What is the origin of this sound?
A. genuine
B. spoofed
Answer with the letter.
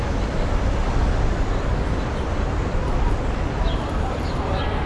A